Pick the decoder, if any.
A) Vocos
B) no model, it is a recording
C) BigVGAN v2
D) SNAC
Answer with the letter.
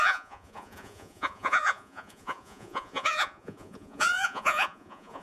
A